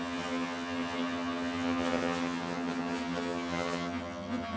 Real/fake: fake